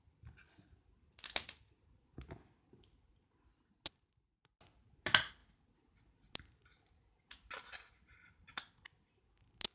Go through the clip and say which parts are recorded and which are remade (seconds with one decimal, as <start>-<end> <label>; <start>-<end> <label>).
0.0-9.7 recorded